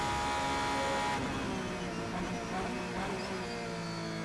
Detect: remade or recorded recorded